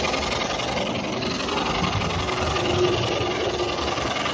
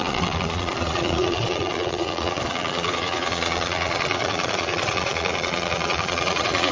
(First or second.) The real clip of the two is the first